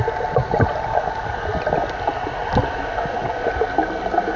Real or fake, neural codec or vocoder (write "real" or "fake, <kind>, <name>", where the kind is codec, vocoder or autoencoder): real